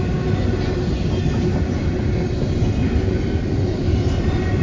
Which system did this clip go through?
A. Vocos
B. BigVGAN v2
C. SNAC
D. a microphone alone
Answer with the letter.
D